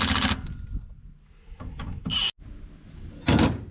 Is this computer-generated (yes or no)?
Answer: no